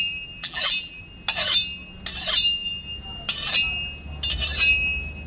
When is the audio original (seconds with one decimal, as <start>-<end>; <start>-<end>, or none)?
0.0-0.4; 1.0-5.3